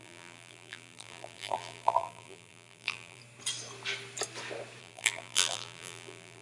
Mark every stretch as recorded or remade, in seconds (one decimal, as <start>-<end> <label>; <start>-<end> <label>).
0.0-3.2 remade; 3.2-4.8 recorded; 4.8-6.4 remade